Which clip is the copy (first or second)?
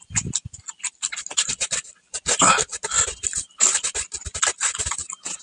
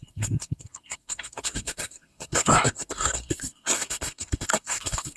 second